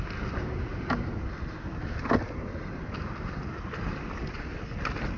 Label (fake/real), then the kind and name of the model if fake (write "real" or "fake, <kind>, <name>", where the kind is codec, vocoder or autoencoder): real